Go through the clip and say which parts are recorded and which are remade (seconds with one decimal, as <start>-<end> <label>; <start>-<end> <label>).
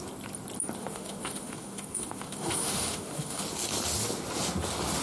0.0-0.8 recorded; 0.8-3.4 remade; 3.4-5.0 recorded